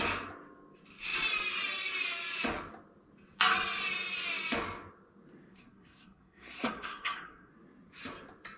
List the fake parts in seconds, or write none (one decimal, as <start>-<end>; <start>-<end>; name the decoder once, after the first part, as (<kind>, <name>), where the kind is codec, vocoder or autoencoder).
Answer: 5.5-7.5 (codec, SNAC)

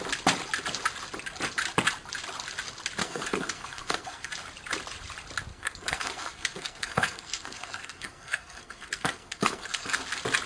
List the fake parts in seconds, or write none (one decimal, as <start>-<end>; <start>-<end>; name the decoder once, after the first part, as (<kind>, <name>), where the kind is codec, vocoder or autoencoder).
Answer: 3.0-4.3 (codec, SNAC); 5.5-10.0

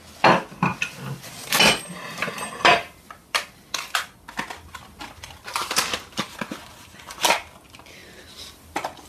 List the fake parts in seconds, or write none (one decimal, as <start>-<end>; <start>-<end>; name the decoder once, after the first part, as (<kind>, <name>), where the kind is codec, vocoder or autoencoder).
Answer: none

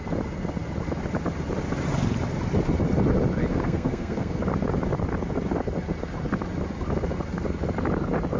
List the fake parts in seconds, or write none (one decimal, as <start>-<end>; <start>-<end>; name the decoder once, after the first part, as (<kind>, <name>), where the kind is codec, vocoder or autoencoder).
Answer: 3.5-4.4 (codec, SNAC)

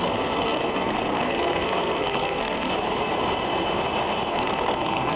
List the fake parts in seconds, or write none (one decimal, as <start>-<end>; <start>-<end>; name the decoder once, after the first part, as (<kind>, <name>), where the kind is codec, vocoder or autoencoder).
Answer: 0.0-2.7 (codec, SNAC); 4.3-5.2

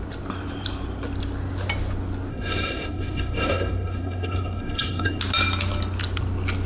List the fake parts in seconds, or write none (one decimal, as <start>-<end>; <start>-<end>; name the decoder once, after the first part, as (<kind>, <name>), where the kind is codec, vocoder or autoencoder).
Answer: 2.3-5.2 (codec, SNAC)

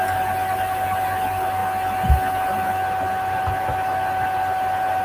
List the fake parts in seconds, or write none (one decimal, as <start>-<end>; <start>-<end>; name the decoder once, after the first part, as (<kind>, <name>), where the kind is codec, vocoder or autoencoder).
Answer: none